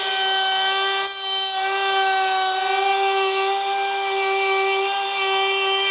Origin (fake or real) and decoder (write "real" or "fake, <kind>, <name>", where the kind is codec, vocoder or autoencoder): real